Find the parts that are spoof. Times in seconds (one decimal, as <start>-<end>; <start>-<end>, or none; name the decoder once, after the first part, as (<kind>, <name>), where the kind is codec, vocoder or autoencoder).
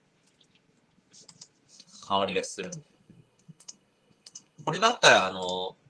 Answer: 1.7-5.2 (codec, SNAC)